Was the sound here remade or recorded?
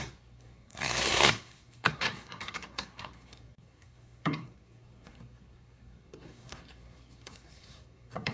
remade